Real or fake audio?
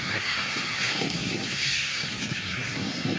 fake